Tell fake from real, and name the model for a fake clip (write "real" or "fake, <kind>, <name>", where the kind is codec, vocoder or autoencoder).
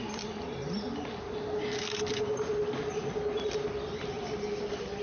real